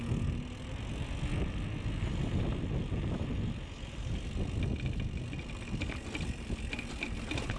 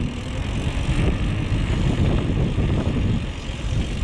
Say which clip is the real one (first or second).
first